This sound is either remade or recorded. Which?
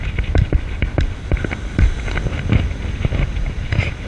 recorded